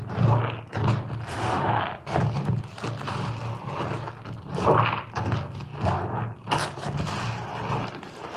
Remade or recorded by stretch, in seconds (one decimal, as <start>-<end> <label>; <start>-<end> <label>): 0.0-1.3 recorded; 1.3-1.8 remade; 1.8-8.4 recorded